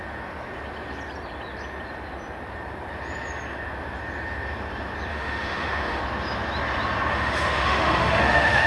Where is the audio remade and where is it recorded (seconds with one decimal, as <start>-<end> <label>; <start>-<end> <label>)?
0.0-5.1 recorded; 5.1-6.0 remade; 6.0-7.1 recorded; 7.1-8.7 remade